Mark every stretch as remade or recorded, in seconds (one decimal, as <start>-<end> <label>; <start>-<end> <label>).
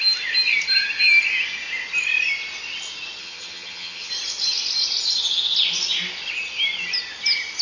0.0-3.2 recorded; 3.2-4.1 remade; 4.1-7.6 recorded